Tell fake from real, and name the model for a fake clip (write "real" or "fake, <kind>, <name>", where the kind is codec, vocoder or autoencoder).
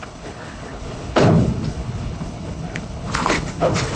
fake, codec, HILCodec